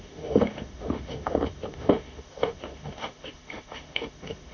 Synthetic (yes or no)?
yes